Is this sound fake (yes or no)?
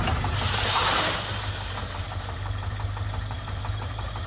yes